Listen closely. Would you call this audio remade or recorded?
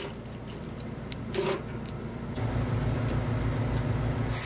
recorded